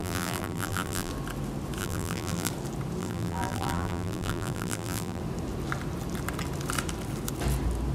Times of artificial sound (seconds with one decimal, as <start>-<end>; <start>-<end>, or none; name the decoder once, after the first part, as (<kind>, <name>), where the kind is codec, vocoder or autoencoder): 0.0-1.1 (vocoder, BigVGAN v2); 1.8-2.5; 3.0-5.2